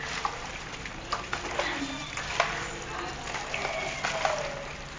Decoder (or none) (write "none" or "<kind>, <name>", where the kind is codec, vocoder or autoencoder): none